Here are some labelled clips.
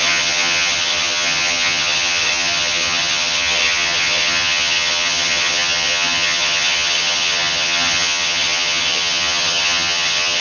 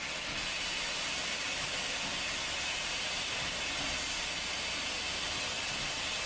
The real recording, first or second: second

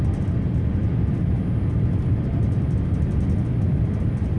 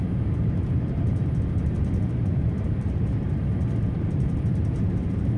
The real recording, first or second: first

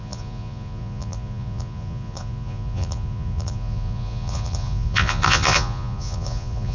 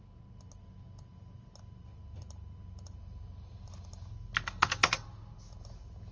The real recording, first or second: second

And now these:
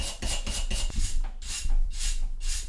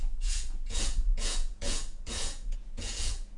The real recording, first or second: first